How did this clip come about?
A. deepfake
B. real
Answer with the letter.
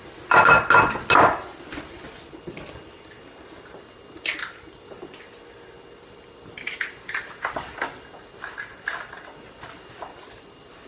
B